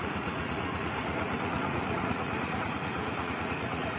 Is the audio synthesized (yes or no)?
yes